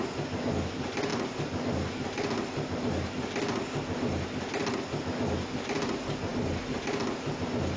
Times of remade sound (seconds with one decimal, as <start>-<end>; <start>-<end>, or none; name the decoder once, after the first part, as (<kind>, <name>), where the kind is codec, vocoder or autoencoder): none